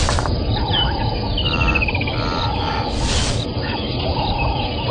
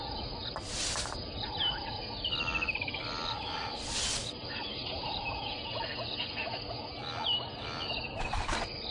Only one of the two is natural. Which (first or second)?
second